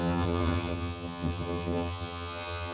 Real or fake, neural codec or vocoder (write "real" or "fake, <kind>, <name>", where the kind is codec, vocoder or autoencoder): fake, vocoder, HiFi-GAN